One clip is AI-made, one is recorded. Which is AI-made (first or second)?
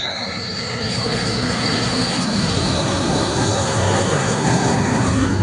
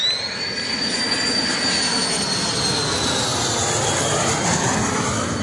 first